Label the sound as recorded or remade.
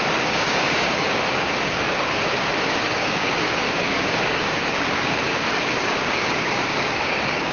remade